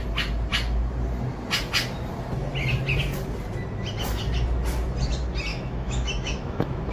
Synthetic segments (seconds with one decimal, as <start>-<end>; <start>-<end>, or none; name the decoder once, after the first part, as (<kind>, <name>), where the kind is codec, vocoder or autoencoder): 5.5-6.9 (autoencoder, DAC-VAE)